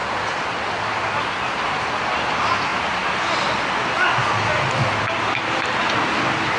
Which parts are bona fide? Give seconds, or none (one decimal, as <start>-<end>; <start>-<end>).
0.8-6.6